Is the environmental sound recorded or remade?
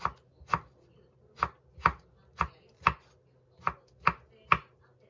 recorded